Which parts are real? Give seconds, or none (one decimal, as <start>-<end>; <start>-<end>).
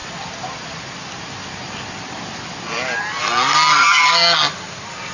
0.0-5.1